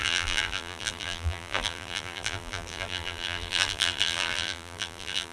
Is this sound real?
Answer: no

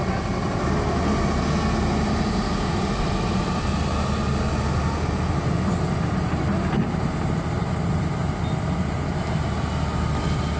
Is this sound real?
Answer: yes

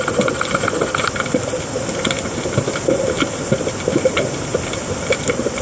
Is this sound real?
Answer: yes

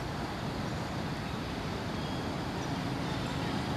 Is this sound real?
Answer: yes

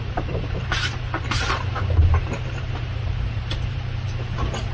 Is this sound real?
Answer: no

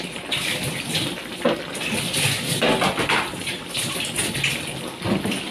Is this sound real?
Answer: yes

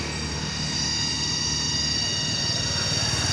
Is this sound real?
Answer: yes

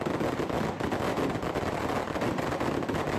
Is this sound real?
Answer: yes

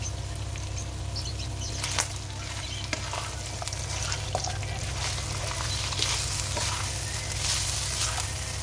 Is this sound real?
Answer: yes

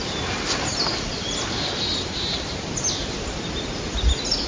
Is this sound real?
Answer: yes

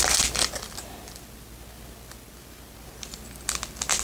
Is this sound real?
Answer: yes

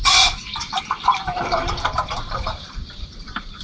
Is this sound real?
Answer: no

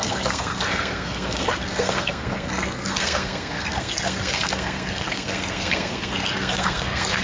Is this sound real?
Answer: no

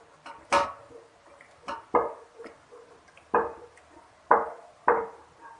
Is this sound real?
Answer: yes